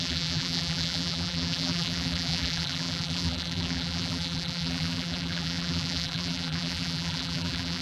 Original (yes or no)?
no